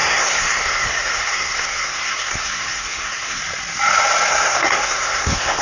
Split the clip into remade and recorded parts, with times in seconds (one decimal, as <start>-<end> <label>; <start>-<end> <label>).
0.0-3.4 remade; 3.4-4.3 recorded; 4.3-5.6 remade